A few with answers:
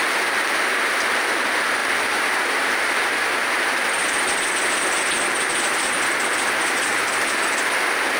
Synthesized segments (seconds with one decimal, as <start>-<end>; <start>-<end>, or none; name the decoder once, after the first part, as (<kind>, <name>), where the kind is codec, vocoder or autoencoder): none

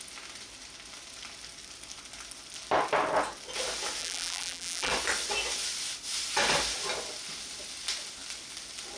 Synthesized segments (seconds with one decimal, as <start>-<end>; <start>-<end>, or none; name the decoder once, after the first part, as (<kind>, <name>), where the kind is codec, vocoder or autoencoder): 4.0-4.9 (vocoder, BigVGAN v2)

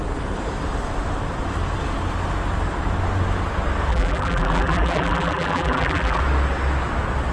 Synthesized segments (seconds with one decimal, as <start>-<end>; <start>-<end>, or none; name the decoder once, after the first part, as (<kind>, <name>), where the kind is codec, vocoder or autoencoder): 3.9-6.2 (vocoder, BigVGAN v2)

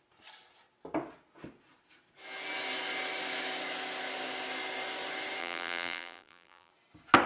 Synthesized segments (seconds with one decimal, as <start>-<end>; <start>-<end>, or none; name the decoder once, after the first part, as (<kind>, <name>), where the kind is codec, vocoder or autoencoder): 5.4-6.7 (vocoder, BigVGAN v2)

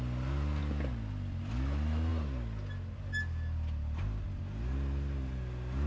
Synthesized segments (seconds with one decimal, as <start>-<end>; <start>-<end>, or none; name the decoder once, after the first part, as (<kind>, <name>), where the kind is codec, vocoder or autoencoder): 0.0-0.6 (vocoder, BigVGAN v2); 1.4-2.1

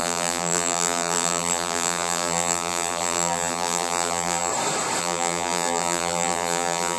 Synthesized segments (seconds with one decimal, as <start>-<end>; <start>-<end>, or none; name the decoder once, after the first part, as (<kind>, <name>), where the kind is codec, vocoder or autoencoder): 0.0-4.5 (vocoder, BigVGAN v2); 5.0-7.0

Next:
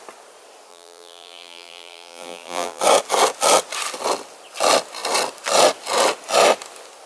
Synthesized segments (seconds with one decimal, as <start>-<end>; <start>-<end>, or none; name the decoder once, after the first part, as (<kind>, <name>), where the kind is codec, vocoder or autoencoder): 0.7-2.8 (vocoder, BigVGAN v2)

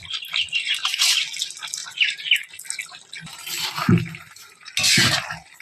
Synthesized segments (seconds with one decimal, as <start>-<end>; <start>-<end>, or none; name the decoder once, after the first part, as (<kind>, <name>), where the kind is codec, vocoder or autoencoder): 0.6-1.2 (vocoder, BigVGAN v2); 1.8-2.4; 3.3-4.7